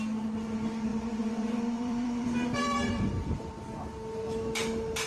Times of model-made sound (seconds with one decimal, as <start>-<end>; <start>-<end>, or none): 0.9-3.5